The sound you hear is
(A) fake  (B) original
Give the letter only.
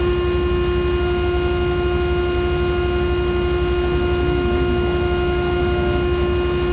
B